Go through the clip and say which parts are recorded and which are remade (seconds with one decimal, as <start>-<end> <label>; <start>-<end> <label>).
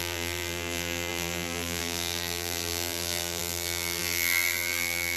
0.0-5.2 remade